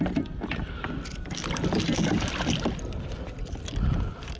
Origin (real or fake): real